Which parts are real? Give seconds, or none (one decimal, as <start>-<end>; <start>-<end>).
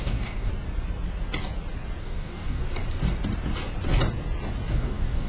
0.5-2.0; 2.6-4.7